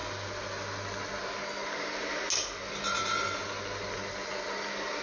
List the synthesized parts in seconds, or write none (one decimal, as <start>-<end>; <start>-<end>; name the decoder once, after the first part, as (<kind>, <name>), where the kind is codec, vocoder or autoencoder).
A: none